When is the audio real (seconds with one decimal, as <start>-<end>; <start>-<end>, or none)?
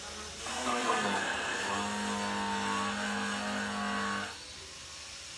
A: 0.0-0.5; 1.7-5.4